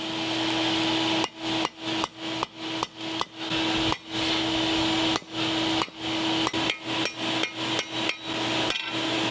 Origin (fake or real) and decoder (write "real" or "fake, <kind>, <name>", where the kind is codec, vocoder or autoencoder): real